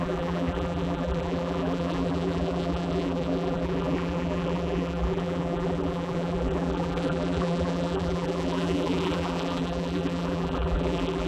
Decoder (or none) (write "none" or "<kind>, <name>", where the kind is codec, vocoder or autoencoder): vocoder, BigVGAN v2